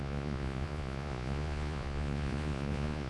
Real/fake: fake